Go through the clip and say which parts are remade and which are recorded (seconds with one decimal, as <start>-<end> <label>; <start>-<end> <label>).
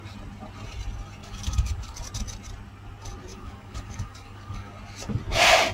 0.0-1.2 recorded; 1.2-2.0 remade; 2.0-3.3 recorded; 3.3-4.7 remade; 4.7-5.7 recorded